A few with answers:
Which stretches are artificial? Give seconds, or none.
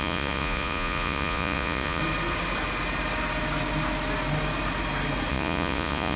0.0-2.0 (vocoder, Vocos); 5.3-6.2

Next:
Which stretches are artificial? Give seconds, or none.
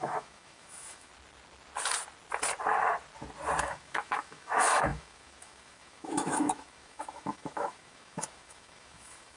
0.0-1.1 (autoencoder, DAC-VAE); 3.6-9.4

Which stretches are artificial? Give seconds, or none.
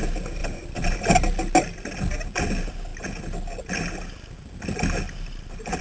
0.4-1.1 (vocoder, BigVGAN v2)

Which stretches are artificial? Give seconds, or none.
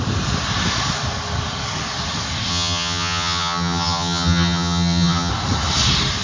2.5-5.3 (vocoder, HiFi-GAN)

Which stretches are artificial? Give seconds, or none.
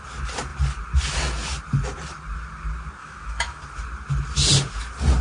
3.0-3.6 (autoencoder, DAC-VAE)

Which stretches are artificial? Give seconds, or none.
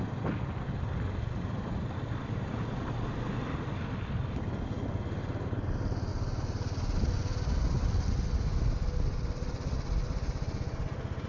none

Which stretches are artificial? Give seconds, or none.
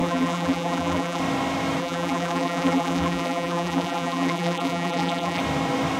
0.0-1.2 (vocoder, BigVGAN v2); 1.8-5.4